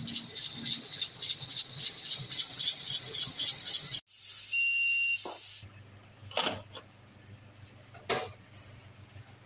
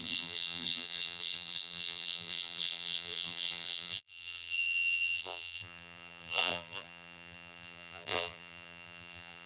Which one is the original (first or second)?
first